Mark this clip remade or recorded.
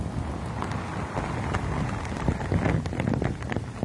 recorded